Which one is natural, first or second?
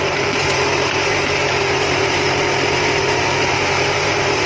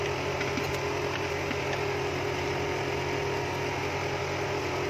second